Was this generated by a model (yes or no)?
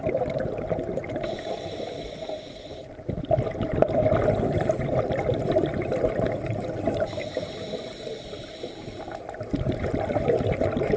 yes